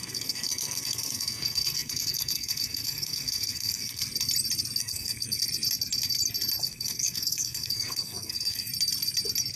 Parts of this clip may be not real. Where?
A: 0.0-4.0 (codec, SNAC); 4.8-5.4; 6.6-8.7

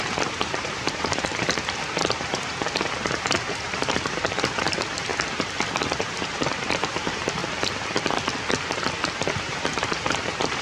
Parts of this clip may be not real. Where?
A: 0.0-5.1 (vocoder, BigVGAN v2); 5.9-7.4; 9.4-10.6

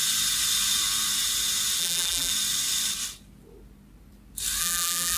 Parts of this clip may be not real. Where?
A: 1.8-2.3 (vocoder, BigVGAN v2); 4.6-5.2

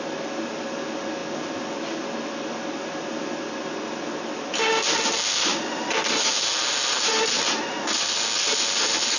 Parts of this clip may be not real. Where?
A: none

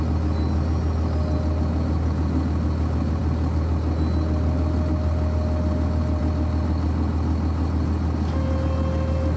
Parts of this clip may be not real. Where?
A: none

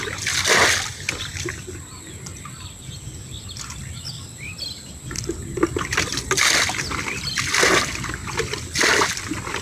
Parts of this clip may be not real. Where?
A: none